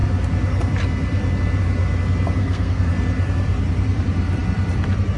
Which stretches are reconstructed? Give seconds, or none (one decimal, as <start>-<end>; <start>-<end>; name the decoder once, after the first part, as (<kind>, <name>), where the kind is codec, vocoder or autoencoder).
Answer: 2.4-2.9 (codec, SNAC)